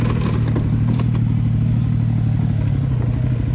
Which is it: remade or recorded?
recorded